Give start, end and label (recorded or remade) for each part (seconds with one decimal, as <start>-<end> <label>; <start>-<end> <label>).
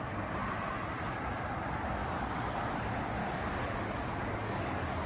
0.0-2.0 recorded; 2.0-2.7 remade; 2.7-3.2 recorded; 3.2-5.1 remade